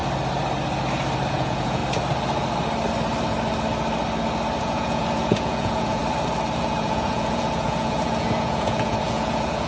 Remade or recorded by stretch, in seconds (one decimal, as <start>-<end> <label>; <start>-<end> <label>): 0.0-1.3 recorded; 1.3-1.8 remade; 1.8-4.6 recorded; 4.6-6.0 remade; 6.0-6.6 recorded; 6.6-9.7 remade